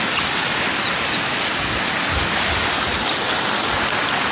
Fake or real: real